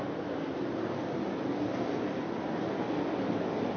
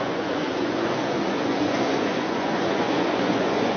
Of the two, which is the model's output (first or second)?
second